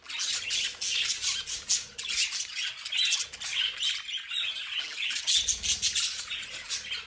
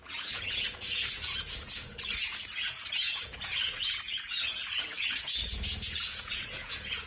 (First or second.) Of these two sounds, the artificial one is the second